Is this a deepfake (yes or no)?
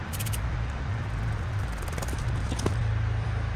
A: no